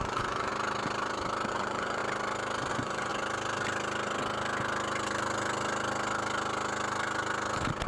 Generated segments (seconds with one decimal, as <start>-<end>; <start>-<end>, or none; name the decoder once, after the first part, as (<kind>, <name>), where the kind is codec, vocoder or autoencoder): 0.0-0.5 (vocoder, Vocos); 1.5-2.0; 2.7-3.1